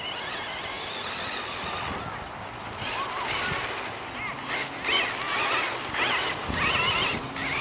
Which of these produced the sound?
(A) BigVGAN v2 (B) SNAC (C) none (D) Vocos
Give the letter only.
C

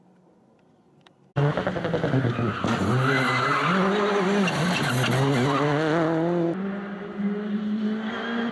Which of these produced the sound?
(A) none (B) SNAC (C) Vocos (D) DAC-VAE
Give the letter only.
A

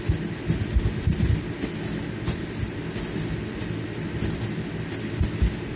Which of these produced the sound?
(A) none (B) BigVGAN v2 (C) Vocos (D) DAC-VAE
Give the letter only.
A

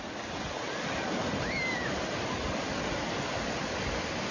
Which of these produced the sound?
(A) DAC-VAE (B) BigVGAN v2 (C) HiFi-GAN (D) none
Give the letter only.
D